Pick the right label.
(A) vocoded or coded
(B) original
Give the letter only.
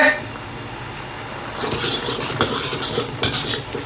B